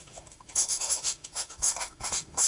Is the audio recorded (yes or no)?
no